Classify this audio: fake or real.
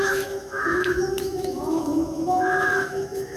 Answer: fake